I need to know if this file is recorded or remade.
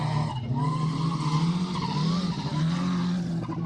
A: recorded